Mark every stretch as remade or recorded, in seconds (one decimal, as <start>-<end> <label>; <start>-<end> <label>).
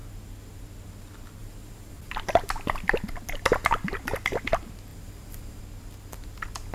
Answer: 0.0-1.4 recorded; 1.4-2.0 remade; 2.0-4.9 recorded; 4.9-5.6 remade; 5.6-6.7 recorded